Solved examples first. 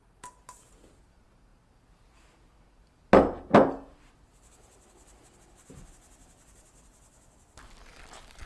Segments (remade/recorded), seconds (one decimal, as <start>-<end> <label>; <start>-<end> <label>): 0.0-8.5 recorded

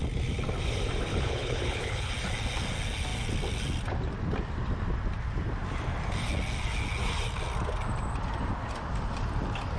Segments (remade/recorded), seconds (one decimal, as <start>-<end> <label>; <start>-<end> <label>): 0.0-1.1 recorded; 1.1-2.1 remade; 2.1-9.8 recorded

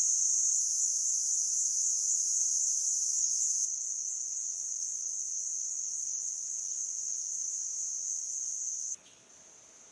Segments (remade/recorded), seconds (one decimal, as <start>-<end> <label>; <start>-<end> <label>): 0.0-3.1 recorded; 3.1-7.5 remade; 7.5-8.0 recorded; 8.0-9.3 remade; 9.3-9.9 recorded

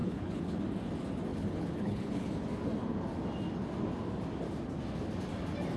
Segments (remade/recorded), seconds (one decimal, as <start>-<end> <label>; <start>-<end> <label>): 0.0-0.6 remade; 0.6-1.3 recorded; 1.3-2.3 remade; 2.3-5.8 recorded